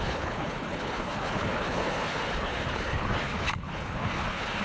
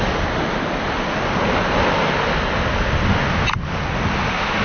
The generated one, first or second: first